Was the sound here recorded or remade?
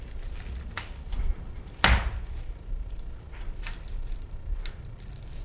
recorded